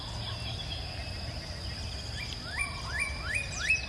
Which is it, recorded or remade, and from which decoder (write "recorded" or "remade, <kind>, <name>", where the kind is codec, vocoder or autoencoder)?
recorded